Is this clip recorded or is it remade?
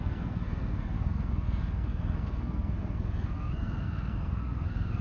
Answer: remade